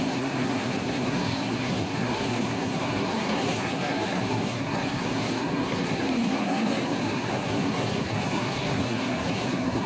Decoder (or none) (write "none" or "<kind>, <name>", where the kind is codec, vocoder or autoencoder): codec, SNAC